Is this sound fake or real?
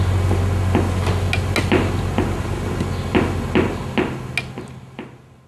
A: real